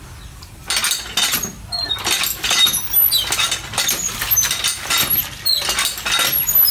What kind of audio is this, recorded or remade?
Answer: recorded